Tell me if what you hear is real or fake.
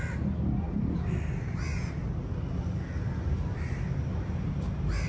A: real